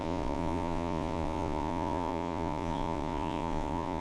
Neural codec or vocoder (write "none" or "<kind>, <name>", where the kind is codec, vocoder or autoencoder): vocoder, Vocos